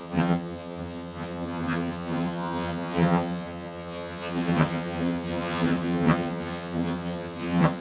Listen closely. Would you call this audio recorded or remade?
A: remade